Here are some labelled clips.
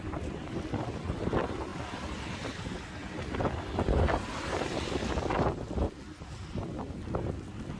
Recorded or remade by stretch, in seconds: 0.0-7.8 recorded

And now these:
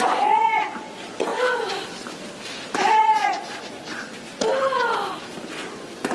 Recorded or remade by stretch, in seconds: 0.0-1.3 remade; 1.3-2.9 recorded; 2.9-4.3 remade; 4.3-5.5 recorded; 5.5-6.1 remade

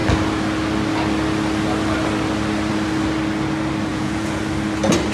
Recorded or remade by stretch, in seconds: 0.0-3.9 recorded; 3.9-4.4 remade; 4.4-5.1 recorded

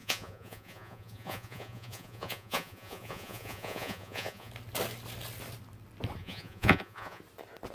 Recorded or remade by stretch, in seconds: 0.0-4.5 remade; 4.5-6.2 recorded; 6.2-7.2 remade; 7.2-7.7 recorded

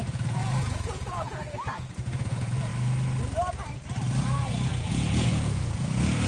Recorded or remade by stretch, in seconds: 0.0-2.7 remade; 2.7-4.9 recorded; 4.9-6.3 remade